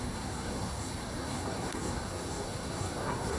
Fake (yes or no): yes